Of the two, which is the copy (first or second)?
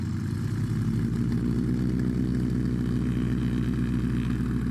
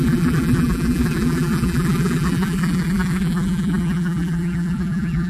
second